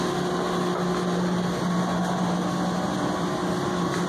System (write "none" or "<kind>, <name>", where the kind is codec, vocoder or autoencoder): none